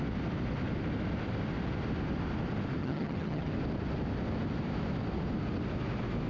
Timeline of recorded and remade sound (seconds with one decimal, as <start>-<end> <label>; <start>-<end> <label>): 0.0-2.8 recorded; 2.8-3.5 remade; 3.5-6.3 recorded